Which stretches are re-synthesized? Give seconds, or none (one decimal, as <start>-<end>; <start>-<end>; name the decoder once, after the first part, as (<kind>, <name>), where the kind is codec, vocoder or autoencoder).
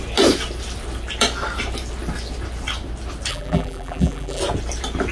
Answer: 3.3-4.4 (vocoder, BigVGAN v2)